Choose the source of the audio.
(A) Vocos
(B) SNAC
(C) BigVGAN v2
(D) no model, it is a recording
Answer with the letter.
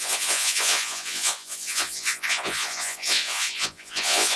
A